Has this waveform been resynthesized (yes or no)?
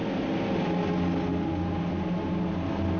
no